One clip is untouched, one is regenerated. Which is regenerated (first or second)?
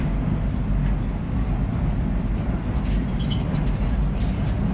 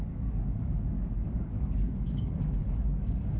second